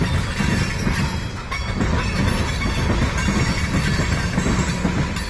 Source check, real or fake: real